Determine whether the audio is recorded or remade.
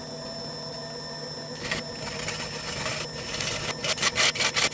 recorded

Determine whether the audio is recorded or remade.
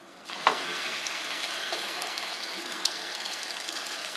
remade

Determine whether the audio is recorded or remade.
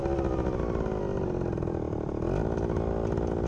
recorded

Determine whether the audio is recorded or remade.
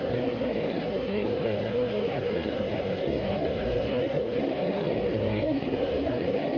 remade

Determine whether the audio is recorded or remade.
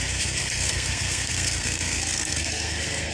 remade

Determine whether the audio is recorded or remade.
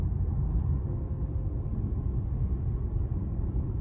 recorded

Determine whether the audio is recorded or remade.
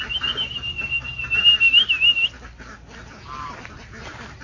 recorded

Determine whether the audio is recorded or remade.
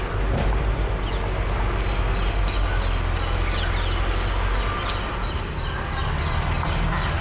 recorded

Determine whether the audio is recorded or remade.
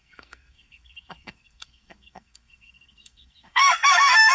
remade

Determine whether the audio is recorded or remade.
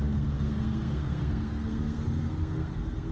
remade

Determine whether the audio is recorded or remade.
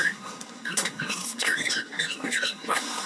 remade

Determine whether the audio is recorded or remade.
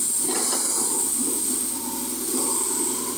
recorded